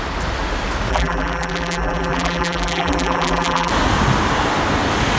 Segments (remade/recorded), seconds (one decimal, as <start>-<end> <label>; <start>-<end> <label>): 0.0-0.9 recorded; 0.9-3.7 remade; 3.7-5.2 recorded